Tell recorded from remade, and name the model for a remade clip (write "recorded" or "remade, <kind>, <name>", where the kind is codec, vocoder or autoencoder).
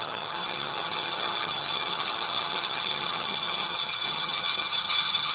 remade, vocoder, HiFi-GAN